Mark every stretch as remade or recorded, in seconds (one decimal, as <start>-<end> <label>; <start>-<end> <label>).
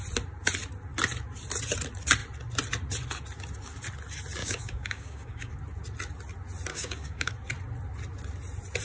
0.0-4.4 recorded; 4.4-5.5 remade; 5.5-6.7 recorded; 6.7-7.3 remade; 7.3-8.8 recorded